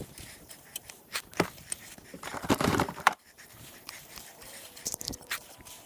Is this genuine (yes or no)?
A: no